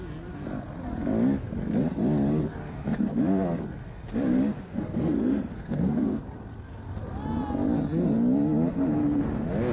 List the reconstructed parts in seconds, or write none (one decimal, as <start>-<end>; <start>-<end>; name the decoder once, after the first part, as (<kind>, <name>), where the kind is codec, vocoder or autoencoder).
4.5-6.2 (codec, SNAC)